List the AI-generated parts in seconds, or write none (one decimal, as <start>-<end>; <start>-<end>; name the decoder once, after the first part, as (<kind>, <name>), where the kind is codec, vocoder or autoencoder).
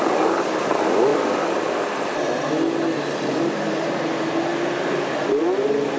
none